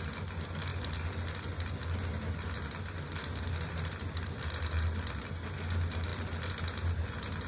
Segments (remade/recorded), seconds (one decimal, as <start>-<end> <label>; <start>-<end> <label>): 0.0-7.5 recorded